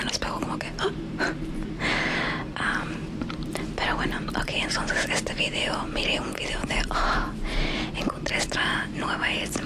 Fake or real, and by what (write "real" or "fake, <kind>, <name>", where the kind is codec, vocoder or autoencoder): fake, vocoder, BigVGAN v2